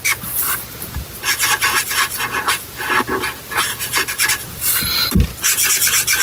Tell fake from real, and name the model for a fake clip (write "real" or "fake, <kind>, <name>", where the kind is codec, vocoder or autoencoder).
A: real